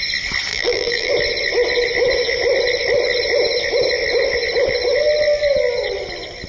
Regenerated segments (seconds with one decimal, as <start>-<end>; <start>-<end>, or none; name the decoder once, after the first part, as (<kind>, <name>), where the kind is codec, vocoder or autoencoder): 0.5-1.1 (vocoder, BigVGAN v2)